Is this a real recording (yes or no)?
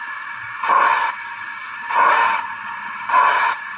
yes